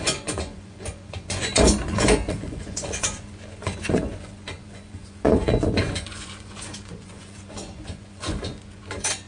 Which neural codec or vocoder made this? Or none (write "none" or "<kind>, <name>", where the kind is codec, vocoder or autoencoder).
vocoder, Vocos